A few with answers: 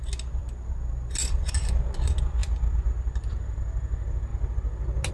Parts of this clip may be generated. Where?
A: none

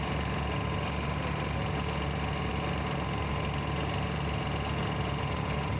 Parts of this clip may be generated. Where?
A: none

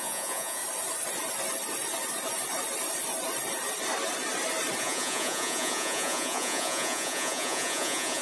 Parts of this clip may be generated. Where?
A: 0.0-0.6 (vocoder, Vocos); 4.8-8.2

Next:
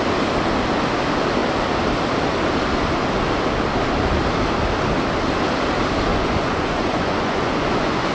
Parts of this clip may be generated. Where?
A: 6.1-8.1 (vocoder, Vocos)